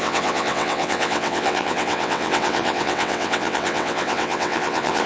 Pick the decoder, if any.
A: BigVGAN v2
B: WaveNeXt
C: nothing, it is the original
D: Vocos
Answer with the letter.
B